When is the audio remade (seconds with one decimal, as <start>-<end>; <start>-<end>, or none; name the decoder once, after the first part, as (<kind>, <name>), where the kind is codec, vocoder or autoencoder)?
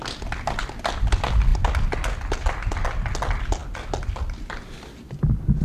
none